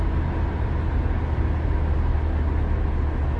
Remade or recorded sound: recorded